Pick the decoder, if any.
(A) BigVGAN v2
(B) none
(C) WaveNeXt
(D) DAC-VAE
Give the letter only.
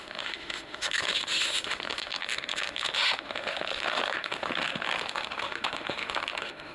D